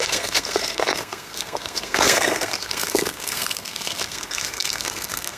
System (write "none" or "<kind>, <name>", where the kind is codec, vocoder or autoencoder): codec, SNAC